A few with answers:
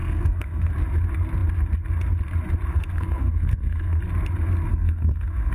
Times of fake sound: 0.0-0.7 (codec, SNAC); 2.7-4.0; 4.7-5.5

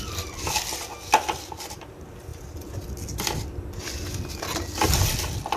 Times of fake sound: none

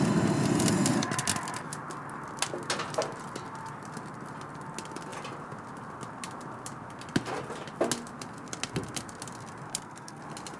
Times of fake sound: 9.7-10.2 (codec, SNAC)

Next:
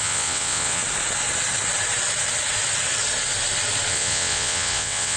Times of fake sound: 0.0-0.8 (vocoder, WaveNeXt); 3.9-5.2